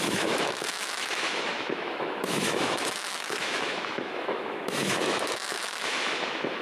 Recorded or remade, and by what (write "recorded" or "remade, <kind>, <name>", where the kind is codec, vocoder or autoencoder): remade, autoencoder, DAC-VAE